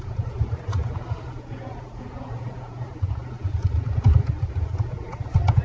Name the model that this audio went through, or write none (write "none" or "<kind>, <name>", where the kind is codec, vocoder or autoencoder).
vocoder, Vocos